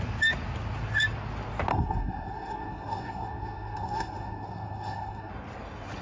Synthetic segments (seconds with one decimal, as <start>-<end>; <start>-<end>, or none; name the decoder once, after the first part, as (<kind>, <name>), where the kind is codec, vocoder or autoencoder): 1.7-5.3 (codec, SNAC)